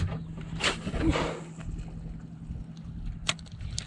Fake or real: real